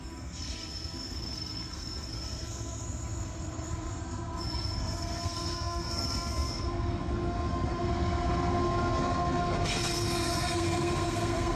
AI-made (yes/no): yes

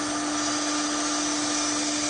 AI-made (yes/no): no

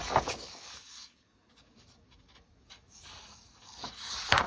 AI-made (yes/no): yes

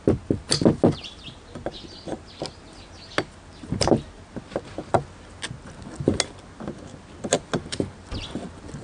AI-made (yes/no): no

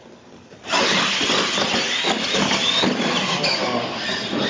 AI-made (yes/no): no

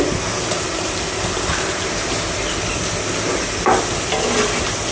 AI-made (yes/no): no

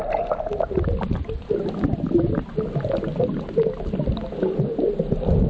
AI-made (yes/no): no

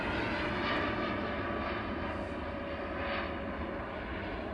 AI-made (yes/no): no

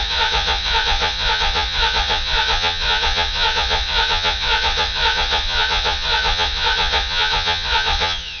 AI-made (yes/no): yes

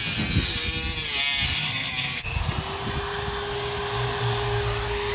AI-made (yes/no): no